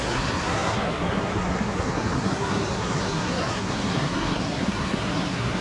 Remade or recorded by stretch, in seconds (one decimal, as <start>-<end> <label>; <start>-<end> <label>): 0.0-5.6 remade